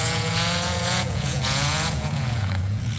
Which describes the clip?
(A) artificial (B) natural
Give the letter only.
A